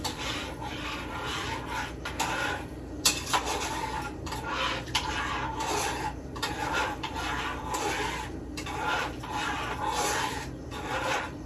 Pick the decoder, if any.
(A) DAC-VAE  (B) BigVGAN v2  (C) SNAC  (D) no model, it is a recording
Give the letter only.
B